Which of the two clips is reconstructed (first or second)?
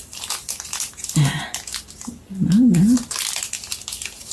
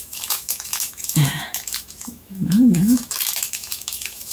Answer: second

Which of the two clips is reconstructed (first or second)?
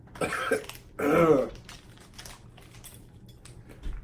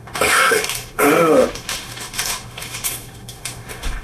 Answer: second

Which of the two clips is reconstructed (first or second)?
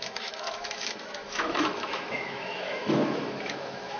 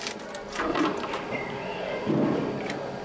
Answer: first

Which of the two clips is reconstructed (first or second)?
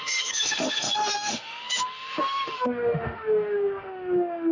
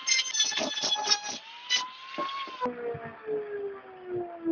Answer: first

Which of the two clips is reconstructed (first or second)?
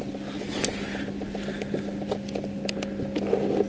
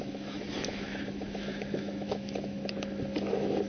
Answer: second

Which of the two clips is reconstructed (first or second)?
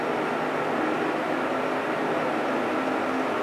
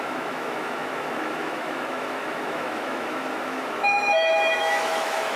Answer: second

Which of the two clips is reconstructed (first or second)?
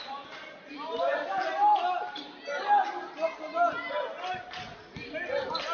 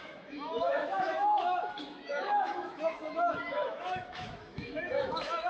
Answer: second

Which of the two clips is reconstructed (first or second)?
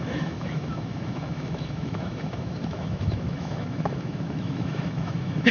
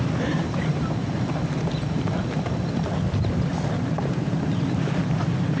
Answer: first